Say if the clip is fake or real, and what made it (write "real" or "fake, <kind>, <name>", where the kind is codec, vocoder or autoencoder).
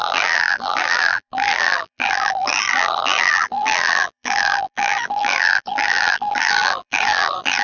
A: fake, vocoder, BigVGAN v2